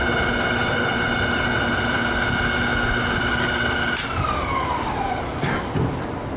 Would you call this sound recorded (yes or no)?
yes